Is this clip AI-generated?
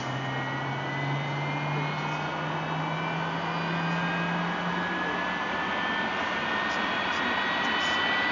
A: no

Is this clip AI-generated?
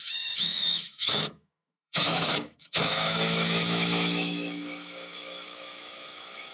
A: yes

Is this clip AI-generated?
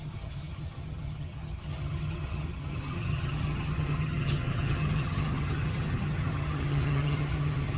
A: yes